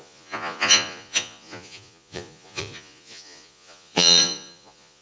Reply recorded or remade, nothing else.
remade